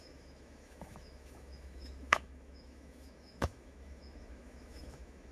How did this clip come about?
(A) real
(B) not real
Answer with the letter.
B